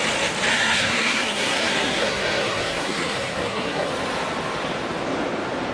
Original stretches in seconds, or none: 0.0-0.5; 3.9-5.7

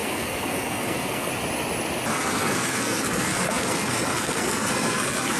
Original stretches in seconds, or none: 1.3-2.1

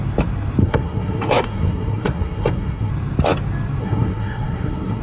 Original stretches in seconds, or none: 0.0-0.6; 2.9-3.8

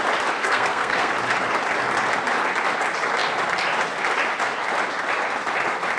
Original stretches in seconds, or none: 0.0-0.4; 1.1-6.0